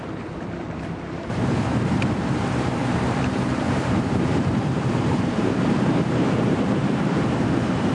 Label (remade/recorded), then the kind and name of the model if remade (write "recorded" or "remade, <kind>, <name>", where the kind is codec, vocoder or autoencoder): remade, vocoder, BigVGAN v2